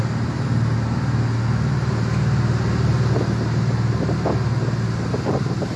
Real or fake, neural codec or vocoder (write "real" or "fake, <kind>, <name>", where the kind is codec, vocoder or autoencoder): real